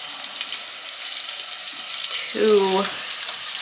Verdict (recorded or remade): recorded